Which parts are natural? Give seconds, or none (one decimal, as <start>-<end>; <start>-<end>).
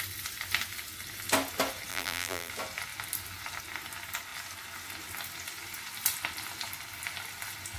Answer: 0.0-1.9; 2.5-7.8